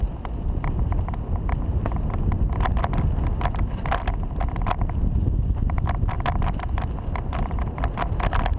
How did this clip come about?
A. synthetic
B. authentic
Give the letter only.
B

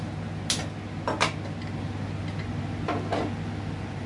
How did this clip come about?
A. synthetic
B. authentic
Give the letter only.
B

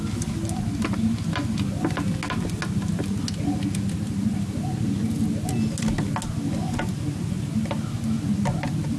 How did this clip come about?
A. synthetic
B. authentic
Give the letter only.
B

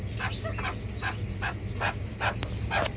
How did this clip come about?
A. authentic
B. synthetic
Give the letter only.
A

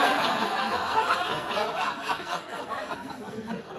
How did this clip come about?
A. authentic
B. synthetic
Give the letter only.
B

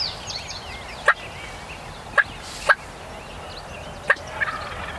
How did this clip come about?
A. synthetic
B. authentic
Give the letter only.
B